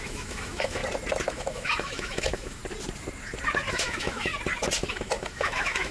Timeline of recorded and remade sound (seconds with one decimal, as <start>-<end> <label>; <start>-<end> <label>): 0.0-0.8 remade; 0.8-1.3 recorded; 1.3-2.6 remade; 2.6-3.7 recorded; 3.7-4.3 remade; 4.3-4.9 recorded; 4.9-5.9 remade